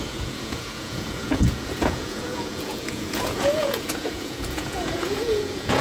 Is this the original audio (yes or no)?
no